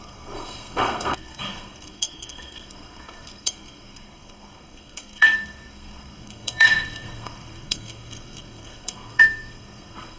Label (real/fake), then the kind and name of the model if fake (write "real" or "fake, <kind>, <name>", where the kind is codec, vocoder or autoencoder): fake, codec, SNAC